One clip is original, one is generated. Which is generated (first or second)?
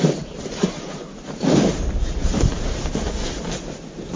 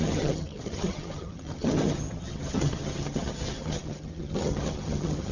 second